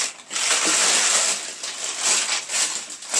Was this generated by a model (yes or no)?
no